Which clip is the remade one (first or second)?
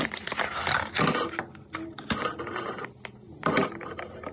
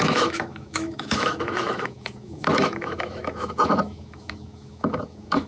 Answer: second